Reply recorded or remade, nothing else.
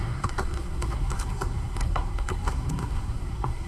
remade